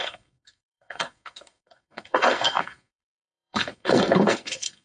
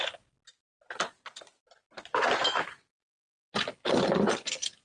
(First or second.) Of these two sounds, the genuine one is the second